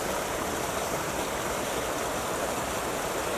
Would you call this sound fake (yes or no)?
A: no